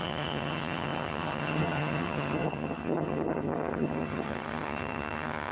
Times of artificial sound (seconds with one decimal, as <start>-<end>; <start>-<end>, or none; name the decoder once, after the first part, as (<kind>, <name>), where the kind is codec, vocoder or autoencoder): 0.0-5.5 (vocoder, HiFi-GAN)